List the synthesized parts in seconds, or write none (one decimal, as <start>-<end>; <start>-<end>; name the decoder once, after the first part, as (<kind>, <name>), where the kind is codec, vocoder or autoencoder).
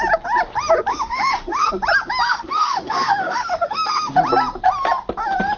0.9-1.7 (autoencoder, DAC-VAE); 2.3-4.1